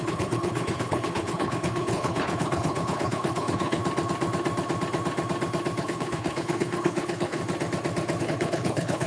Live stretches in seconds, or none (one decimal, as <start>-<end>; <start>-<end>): 3.8-5.8; 7.4-8.2